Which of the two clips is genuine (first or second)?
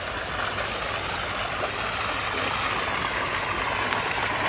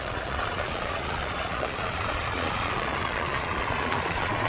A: first